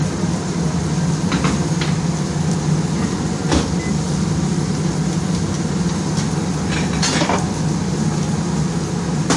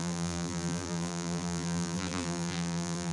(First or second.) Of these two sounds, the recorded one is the first